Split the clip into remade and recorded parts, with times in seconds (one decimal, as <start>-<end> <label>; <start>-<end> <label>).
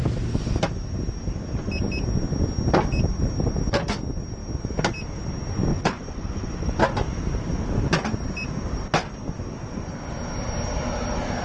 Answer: 0.0-5.7 recorded; 5.7-6.8 remade; 6.8-11.4 recorded